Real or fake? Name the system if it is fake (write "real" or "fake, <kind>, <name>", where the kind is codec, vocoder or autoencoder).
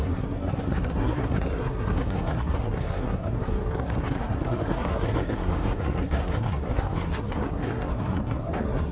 fake, codec, SNAC